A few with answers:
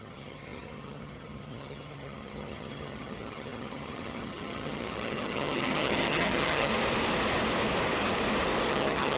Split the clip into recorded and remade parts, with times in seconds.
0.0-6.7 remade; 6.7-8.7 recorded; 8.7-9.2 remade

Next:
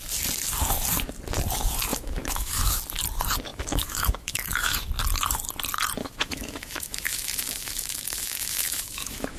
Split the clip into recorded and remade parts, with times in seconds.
0.0-1.9 recorded; 1.9-2.8 remade; 2.8-3.5 recorded; 3.5-4.9 remade; 4.9-6.0 recorded; 6.0-9.4 remade

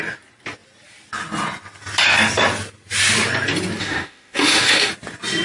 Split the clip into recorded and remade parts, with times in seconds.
0.0-3.8 recorded; 3.8-4.9 remade; 4.9-5.4 recorded